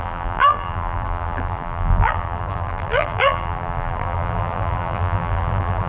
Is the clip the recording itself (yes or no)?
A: no